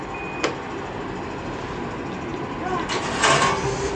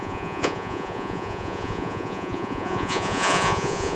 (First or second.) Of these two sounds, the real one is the first